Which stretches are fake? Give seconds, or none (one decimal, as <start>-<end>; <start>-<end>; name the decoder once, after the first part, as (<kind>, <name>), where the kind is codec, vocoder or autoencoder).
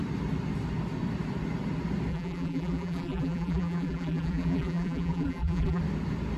2.1-5.8 (vocoder, BigVGAN v2)